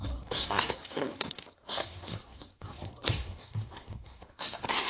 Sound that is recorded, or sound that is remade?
remade